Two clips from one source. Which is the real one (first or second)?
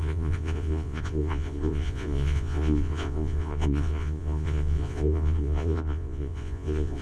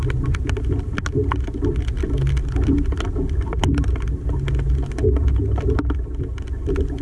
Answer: second